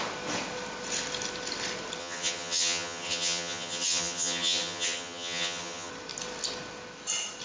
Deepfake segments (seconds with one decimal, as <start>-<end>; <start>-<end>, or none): 2.0-5.9